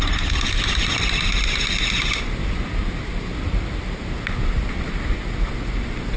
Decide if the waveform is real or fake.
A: real